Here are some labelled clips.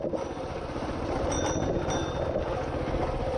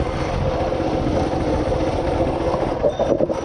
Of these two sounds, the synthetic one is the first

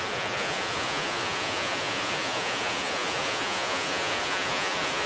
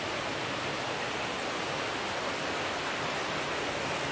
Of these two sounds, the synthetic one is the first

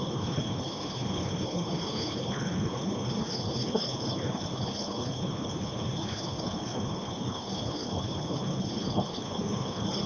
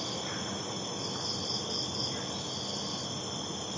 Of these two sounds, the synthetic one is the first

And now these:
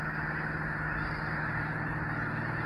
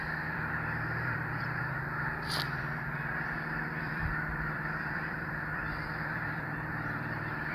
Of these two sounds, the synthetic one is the second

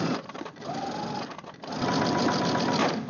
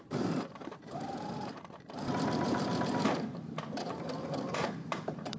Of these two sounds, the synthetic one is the second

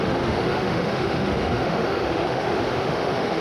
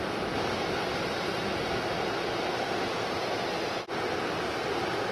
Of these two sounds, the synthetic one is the first